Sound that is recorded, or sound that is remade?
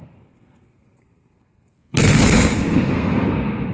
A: remade